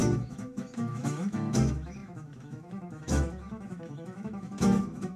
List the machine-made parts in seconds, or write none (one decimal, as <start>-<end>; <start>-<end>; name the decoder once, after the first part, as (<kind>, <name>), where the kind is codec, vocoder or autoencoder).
0.0-5.2 (autoencoder, DAC-VAE)